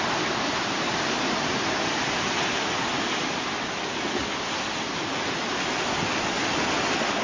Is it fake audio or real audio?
real